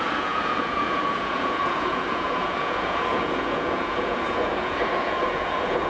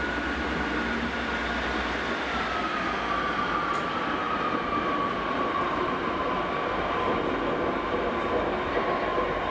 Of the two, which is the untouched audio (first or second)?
second